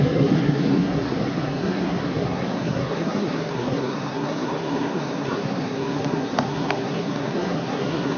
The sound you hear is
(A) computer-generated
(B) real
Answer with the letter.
A